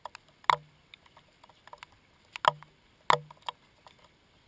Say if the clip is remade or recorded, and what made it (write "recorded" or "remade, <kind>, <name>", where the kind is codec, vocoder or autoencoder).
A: recorded